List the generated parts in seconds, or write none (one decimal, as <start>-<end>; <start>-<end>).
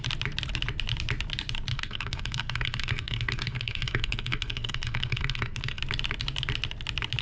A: 1.7-5.8